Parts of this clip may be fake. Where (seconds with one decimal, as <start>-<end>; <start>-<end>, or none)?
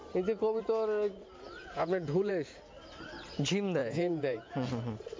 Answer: 1.6-2.3; 3.8-4.7